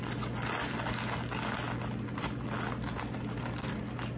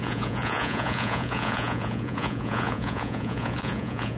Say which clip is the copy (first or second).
second